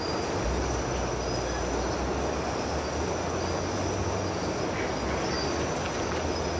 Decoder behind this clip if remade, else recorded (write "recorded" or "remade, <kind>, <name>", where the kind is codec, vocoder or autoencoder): recorded